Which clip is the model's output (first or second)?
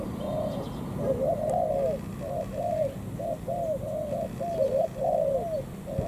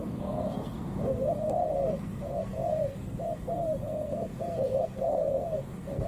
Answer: second